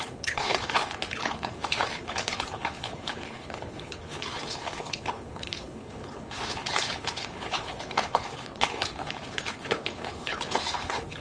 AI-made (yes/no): yes